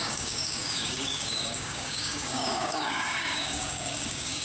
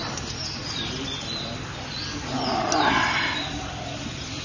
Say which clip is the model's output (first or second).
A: first